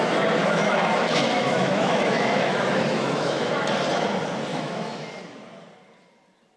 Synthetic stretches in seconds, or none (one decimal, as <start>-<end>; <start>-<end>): 0.4-3.5; 4.5-5.1

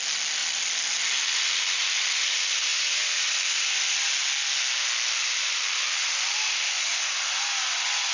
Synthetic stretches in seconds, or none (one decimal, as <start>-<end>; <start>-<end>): 2.7-4.1; 5.2-7.2

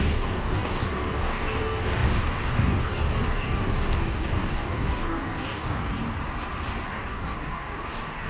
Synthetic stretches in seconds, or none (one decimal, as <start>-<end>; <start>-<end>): 0.0-6.0; 6.9-8.3

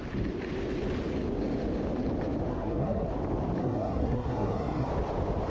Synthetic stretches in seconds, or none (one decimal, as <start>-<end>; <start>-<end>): 2.5-3.1; 3.6-4.9

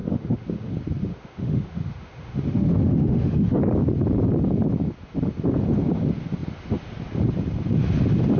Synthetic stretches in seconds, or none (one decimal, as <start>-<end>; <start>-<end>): 0.0-0.7; 1.1-3.6

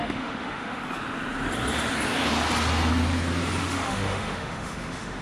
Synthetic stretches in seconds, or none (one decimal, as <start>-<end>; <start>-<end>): 0.0-0.8; 3.6-5.2